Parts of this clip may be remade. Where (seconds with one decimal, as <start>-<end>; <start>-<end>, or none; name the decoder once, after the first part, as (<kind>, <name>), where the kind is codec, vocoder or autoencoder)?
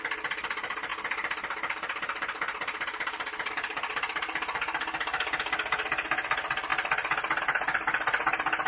none